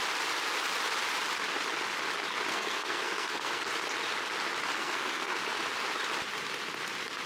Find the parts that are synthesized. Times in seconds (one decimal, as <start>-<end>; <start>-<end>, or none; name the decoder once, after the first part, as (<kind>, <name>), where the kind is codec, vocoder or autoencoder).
2.5-3.7 (codec, SNAC); 4.7-5.4